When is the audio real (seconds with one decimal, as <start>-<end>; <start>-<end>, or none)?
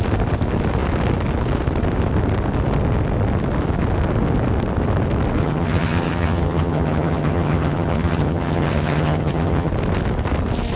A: 0.0-5.4; 9.7-10.8